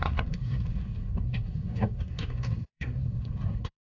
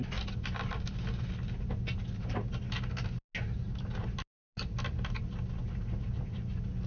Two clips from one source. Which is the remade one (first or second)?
first